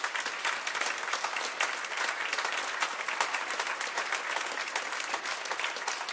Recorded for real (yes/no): yes